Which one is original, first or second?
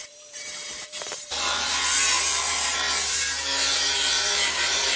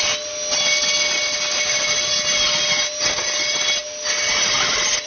second